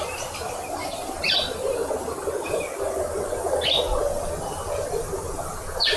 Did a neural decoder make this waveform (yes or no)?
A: no